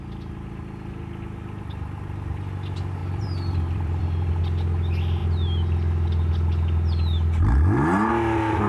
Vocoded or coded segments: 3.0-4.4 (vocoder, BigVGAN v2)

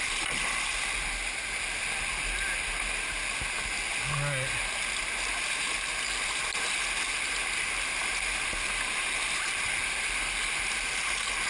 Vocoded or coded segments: none

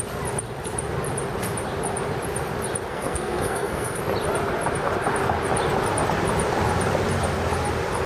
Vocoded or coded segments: 2.9-4.0 (codec, SNAC)

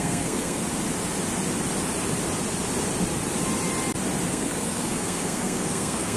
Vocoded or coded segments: 0.0-0.6 (codec, SNAC); 4.3-6.2

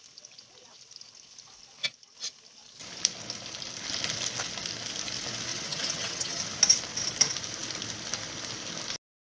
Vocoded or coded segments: 5.5-6.4 (vocoder, HiFi-GAN)

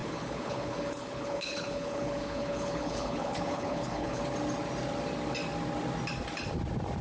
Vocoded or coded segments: 0.0-4.2 (codec, HILCodec)